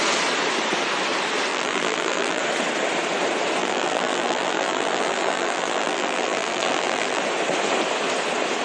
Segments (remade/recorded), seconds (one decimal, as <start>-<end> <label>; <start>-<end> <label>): 0.0-1.5 recorded; 1.5-2.4 remade; 2.4-3.6 recorded; 3.6-7.2 remade; 7.2-8.6 recorded